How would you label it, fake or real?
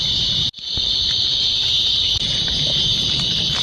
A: fake